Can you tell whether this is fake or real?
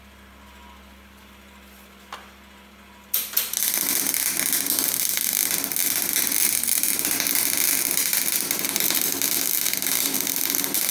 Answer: real